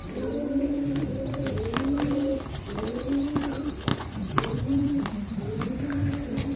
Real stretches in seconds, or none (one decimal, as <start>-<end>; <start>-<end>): 0.0-3.9; 4.9-6.6